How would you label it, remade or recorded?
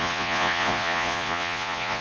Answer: remade